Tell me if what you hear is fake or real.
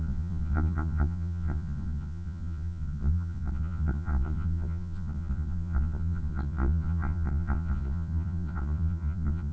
fake